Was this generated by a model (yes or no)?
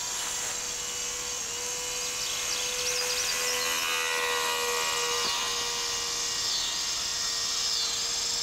no